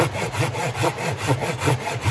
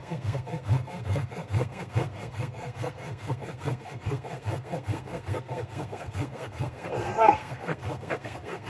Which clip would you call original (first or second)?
first